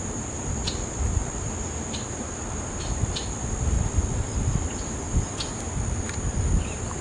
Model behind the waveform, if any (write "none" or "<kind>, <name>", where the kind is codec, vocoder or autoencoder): none